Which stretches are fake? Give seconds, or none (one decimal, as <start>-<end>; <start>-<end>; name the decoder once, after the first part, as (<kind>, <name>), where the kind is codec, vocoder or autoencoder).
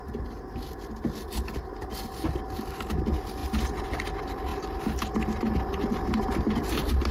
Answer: none